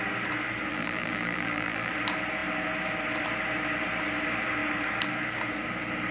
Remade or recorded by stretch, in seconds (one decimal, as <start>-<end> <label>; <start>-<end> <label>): 0.0-0.7 recorded; 0.7-1.9 remade; 1.9-6.1 recorded